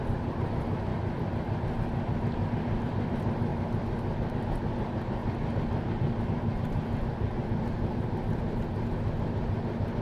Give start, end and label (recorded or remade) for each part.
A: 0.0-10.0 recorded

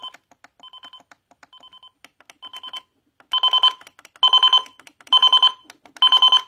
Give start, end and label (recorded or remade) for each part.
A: 0.0-6.5 recorded

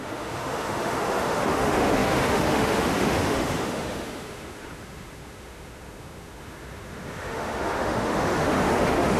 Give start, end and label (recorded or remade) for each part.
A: 0.0-9.2 remade

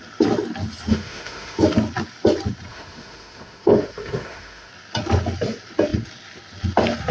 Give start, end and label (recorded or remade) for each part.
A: 0.0-0.9 recorded; 0.9-1.6 remade; 1.6-2.7 recorded; 2.7-4.7 remade; 4.7-7.1 recorded

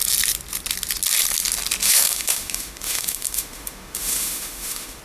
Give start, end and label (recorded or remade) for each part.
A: 0.0-1.8 recorded; 1.8-5.0 remade

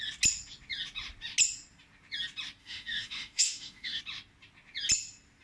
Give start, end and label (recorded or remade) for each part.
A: 0.0-2.6 recorded; 2.6-4.0 remade; 4.0-5.4 recorded

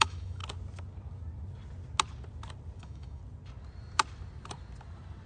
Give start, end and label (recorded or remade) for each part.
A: 0.0-0.4 remade; 0.4-2.8 recorded; 2.8-3.2 remade; 3.2-5.3 recorded

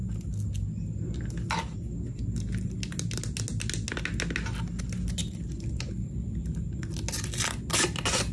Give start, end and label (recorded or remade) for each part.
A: 0.0-8.3 recorded